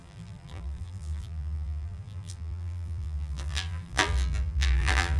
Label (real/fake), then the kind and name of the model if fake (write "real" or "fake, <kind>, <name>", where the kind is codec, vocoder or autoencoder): fake, vocoder, BigVGAN v2